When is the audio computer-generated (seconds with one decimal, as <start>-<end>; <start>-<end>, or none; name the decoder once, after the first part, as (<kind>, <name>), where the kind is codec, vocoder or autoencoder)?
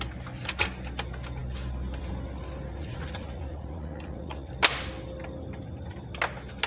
2.8-4.5 (vocoder, Vocos)